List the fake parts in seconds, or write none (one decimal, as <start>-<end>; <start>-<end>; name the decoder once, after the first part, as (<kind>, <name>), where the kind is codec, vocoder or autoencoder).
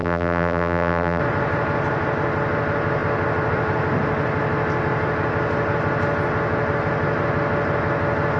0.0-1.2 (vocoder, BigVGAN v2)